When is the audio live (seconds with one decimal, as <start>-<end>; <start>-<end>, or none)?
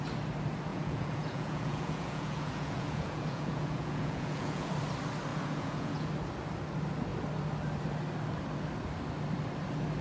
0.0-0.7; 4.7-5.3; 6.1-10.0